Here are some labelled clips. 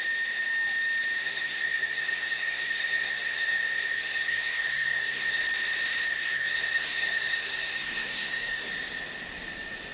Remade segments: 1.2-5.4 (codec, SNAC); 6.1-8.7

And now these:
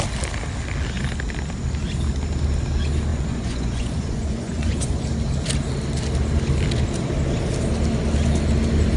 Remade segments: 3.1-5.0 (vocoder, Vocos)